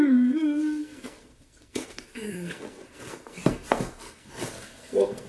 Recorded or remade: remade